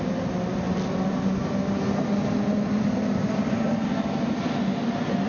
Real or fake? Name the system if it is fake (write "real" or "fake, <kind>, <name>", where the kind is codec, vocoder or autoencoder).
real